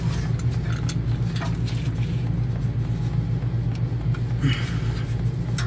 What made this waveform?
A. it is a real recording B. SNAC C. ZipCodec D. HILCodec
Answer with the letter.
A